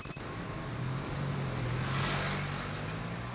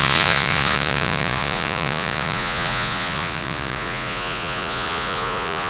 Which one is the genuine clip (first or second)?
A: first